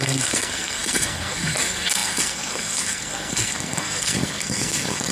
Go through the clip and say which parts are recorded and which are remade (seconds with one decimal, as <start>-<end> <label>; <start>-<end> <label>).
0.0-5.1 remade

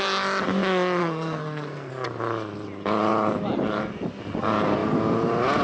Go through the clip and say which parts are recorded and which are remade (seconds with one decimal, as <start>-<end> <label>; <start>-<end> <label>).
0.0-1.0 recorded; 1.0-1.9 remade; 1.9-5.6 recorded